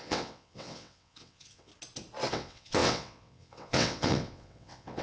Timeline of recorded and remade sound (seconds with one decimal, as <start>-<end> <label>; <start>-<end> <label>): 0.0-1.7 remade; 1.7-2.3 recorded; 2.3-5.0 remade